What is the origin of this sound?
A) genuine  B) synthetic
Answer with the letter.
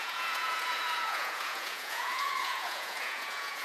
B